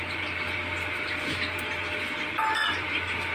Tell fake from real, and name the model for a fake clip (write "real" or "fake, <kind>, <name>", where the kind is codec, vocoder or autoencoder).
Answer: real